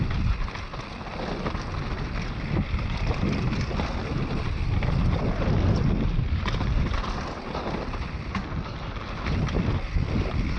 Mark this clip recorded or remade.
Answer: recorded